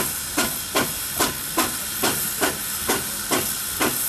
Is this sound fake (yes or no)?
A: no